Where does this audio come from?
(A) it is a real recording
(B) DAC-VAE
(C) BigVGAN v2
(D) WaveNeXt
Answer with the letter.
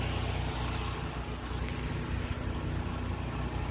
A